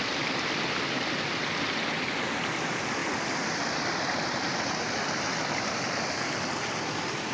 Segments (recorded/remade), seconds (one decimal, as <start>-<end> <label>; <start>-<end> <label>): 0.0-2.5 recorded; 2.5-7.3 remade

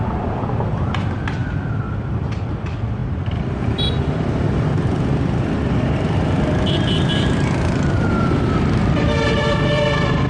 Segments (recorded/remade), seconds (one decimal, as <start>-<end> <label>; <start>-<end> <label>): 0.0-1.4 remade; 1.4-1.9 recorded; 1.9-10.3 remade

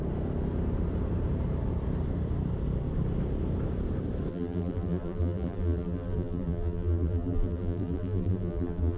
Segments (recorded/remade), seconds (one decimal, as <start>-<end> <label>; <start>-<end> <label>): 0.0-4.3 recorded; 4.3-9.0 remade

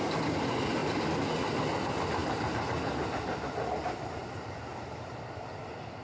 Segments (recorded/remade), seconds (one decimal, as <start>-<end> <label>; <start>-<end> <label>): 0.0-0.8 recorded; 0.8-1.3 remade; 1.3-4.2 recorded; 4.2-6.0 remade

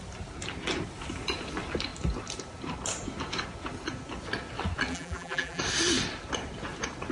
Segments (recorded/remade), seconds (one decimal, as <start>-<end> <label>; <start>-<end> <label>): 0.0-4.9 recorded; 4.9-5.6 remade; 5.6-7.1 recorded

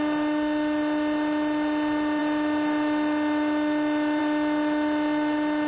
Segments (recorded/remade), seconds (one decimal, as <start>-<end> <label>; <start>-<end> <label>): 0.0-5.7 recorded